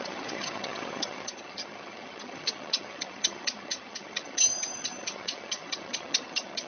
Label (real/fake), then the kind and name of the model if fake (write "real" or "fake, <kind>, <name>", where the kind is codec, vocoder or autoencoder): fake, vocoder, HiFi-GAN